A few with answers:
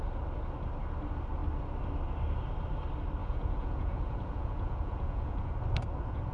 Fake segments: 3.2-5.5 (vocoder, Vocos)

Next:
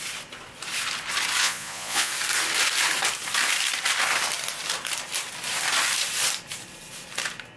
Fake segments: 1.4-2.1 (vocoder, Vocos)

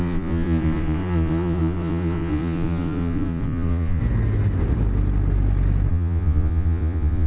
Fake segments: 0.0-4.0 (vocoder, Vocos); 5.9-7.3

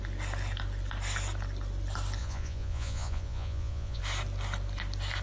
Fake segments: 2.2-4.0 (vocoder, Vocos)

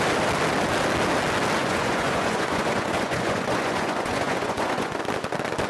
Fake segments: 1.6-5.0 (vocoder, Vocos)

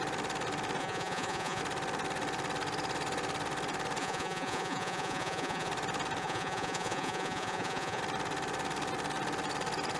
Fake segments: 0.8-1.6 (vocoder, Vocos); 4.0-5.7; 6.2-8.0

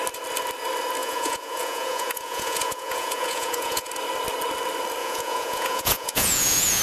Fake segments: 1.0-3.9 (vocoder, Vocos); 5.0-6.8

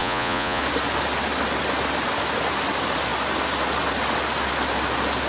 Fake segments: 0.0-0.6 (vocoder, Vocos)